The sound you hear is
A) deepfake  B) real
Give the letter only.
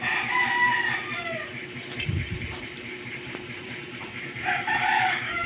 A